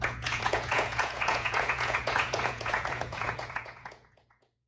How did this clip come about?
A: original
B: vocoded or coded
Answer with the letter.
B